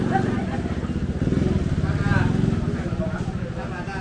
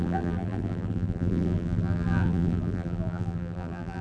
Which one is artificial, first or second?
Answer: second